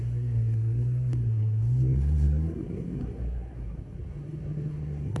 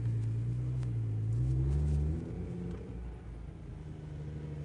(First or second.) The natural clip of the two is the second